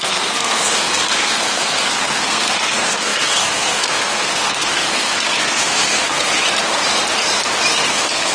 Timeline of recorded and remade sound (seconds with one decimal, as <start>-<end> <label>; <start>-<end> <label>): 0.0-6.3 remade; 6.3-7.7 recorded; 7.7-8.3 remade